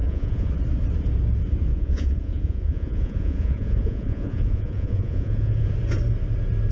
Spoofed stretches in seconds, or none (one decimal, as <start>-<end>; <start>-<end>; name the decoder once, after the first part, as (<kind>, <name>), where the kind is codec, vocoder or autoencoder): 0.0-0.5 (vocoder, Vocos); 1.7-5.7